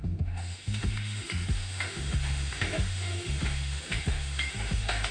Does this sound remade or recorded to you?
remade